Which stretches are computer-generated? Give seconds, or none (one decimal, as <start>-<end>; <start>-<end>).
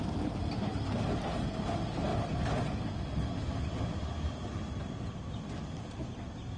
none